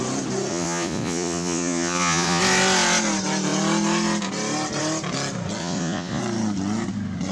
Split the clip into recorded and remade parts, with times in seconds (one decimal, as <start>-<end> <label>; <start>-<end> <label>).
0.0-0.5 recorded; 0.5-2.4 remade; 2.4-5.6 recorded; 5.6-6.2 remade; 6.2-7.3 recorded